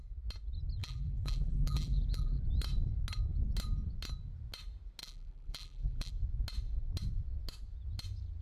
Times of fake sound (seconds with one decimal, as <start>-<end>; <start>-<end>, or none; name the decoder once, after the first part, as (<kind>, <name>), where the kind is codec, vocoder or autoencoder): 0.8-2.4 (vocoder, BigVGAN v2); 5.0-6.1